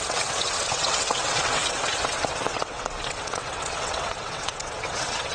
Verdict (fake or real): fake